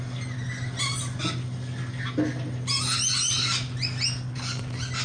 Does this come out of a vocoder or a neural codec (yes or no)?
no